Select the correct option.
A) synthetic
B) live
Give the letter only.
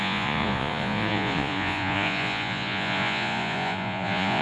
A